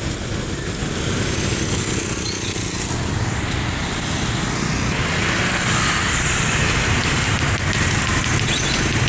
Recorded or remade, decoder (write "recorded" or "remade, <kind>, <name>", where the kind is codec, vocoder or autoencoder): recorded